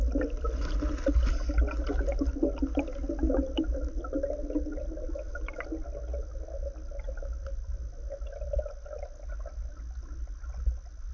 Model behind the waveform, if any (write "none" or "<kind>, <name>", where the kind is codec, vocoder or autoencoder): none